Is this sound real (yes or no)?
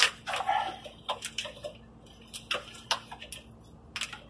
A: yes